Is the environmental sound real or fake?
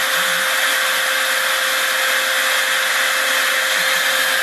real